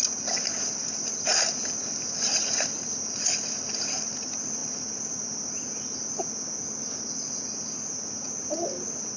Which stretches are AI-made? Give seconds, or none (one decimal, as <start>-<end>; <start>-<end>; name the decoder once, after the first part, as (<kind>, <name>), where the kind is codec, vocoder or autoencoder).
none